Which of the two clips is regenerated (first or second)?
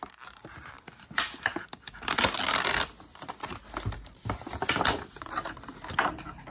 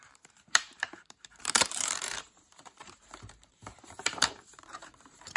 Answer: second